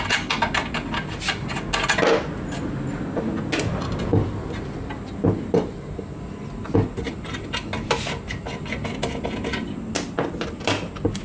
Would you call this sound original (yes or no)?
yes